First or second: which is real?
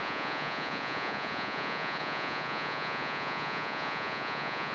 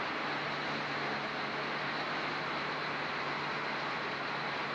second